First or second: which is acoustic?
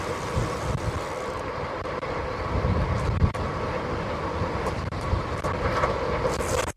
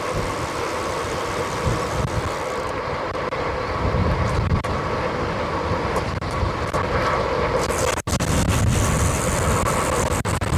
second